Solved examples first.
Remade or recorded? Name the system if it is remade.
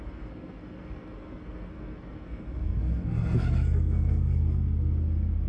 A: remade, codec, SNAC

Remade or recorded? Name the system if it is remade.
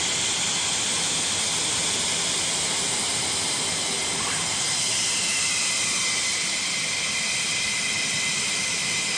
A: recorded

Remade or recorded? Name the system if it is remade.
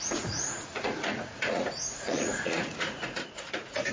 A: remade, vocoder, Vocos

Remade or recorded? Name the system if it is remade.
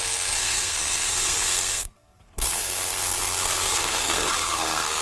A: remade, codec, SNAC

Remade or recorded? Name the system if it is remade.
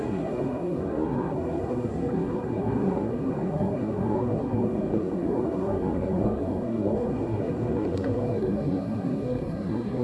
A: remade, codec, SNAC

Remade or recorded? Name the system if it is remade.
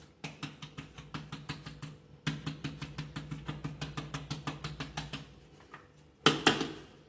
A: recorded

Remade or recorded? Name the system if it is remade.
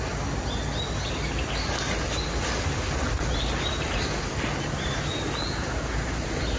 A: recorded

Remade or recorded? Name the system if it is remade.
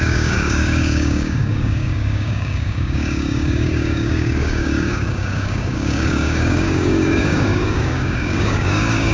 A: remade, codec, DAC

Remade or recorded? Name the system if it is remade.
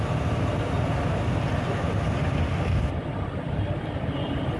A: recorded